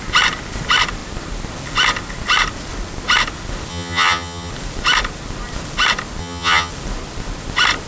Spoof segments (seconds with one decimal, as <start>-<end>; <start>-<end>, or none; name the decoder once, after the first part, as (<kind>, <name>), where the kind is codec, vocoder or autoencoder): 3.7-4.5 (vocoder, HiFi-GAN); 6.2-6.7